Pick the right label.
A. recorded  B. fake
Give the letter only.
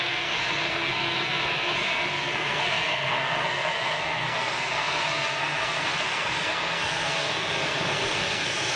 B